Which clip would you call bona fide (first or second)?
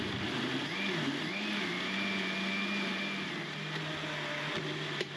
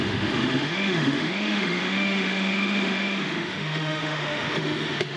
first